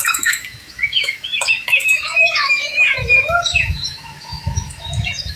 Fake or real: fake